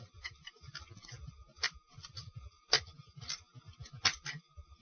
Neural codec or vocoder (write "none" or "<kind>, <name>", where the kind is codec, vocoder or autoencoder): none